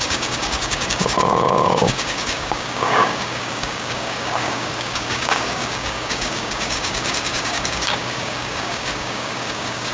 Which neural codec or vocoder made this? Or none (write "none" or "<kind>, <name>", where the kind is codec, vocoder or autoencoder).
codec, DAC